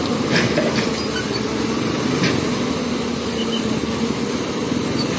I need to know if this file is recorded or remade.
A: recorded